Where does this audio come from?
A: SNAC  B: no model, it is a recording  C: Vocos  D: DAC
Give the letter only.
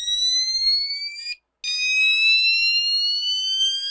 B